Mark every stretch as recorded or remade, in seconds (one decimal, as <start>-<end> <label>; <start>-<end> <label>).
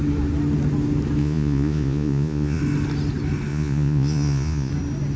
0.0-1.2 recorded; 1.2-2.6 remade; 2.6-3.5 recorded; 3.5-4.7 remade; 4.7-5.2 recorded